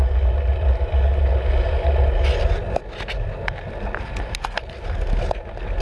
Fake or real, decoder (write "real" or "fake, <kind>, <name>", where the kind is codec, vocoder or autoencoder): real